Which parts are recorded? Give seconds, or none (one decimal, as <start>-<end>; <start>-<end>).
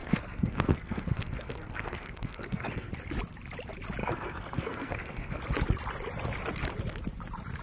2.9-4.0; 5.4-7.6